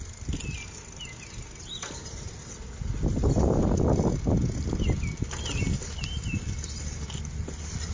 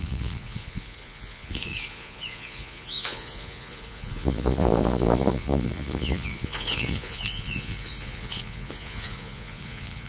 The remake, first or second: second